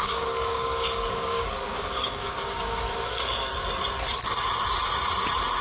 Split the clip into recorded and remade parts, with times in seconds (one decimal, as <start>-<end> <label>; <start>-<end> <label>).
0.0-3.5 remade; 3.5-5.6 recorded